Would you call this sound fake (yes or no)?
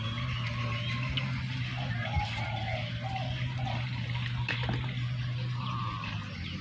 no